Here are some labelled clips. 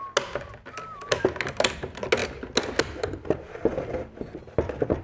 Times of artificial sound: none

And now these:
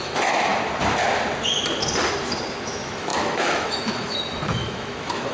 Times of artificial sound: 0.0-0.5 (autoencoder, DAC-VAE); 2.5-5.3

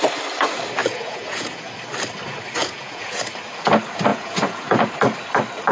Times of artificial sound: 0.8-1.7 (vocoder, Vocos); 2.6-3.2; 4.1-4.9

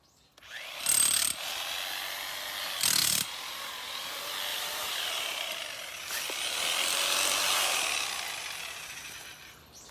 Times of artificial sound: 3.0-4.1 (vocoder, BigVGAN v2); 4.5-5.5

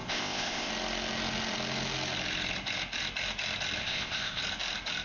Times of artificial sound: 0.0-0.7 (codec, ZipCodec); 3.8-4.4

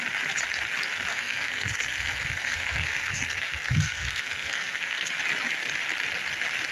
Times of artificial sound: 1.1-5.1 (codec, SNAC)

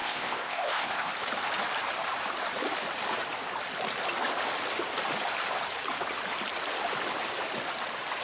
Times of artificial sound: 0.0-1.1 (codec, ZipCodec)

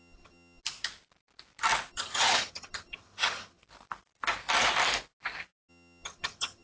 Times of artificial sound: 0.0-0.6 (vocoder, HiFi-GAN); 1.9-3.6; 5.7-6.6